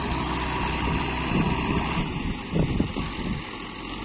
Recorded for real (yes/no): yes